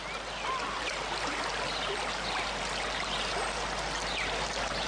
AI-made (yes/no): no